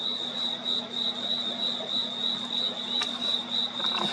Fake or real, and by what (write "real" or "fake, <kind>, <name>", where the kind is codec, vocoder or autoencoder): real